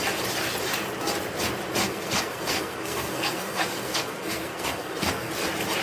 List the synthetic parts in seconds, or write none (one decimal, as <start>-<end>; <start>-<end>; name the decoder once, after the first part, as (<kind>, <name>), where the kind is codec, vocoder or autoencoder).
1.8-5.3 (codec, SNAC)